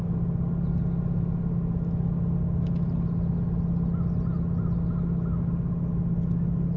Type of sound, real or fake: real